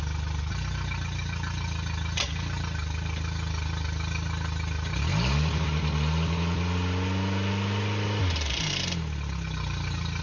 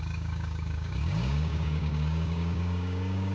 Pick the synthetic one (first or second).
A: second